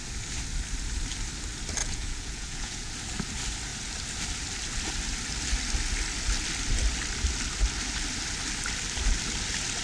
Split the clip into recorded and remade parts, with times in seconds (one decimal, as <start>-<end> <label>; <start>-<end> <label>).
0.0-1.8 recorded; 1.8-2.9 remade; 2.9-9.8 recorded